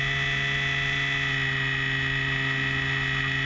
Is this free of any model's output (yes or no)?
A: yes